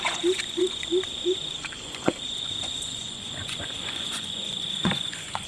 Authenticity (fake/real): fake